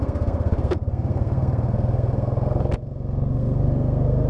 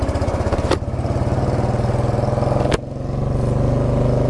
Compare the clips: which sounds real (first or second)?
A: second